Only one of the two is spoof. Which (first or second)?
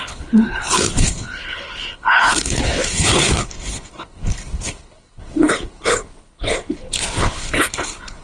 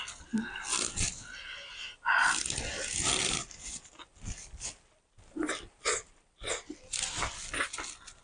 first